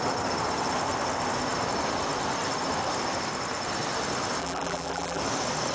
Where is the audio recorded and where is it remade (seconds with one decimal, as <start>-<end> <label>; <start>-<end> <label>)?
0.0-4.4 recorded; 4.4-5.2 remade; 5.2-5.7 recorded